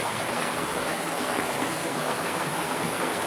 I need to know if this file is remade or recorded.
remade